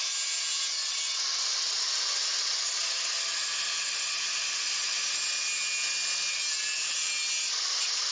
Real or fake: real